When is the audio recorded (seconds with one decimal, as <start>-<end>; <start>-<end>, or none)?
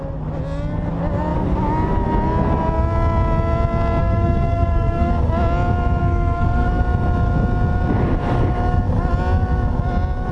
0.0-4.0; 5.1-6.0; 6.8-10.3